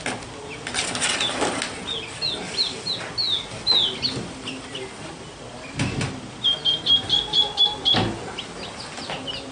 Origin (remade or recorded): recorded